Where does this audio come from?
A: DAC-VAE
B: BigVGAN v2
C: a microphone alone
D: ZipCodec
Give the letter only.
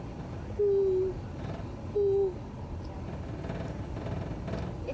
C